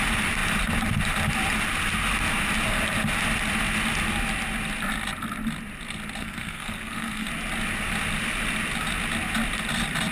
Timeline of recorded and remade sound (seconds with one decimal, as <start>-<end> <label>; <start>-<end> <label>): 0.0-6.2 recorded; 6.2-7.3 remade; 7.3-10.1 recorded